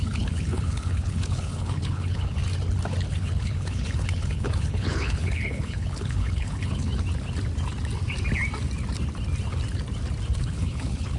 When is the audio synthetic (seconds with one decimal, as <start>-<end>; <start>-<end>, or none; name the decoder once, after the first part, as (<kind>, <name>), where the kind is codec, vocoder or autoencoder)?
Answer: 0.0-2.4 (codec, HILCodec); 3.1-6.9; 10.4-11.2